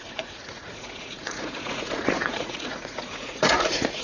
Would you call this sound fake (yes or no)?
yes